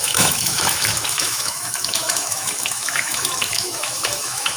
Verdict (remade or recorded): remade